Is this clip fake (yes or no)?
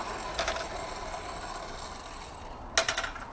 no